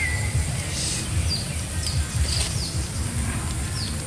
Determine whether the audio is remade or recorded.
recorded